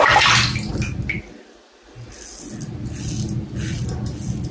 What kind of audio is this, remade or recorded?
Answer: recorded